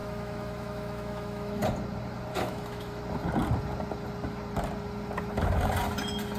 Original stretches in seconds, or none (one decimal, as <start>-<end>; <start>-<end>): 1.6-2.3; 3.0-6.4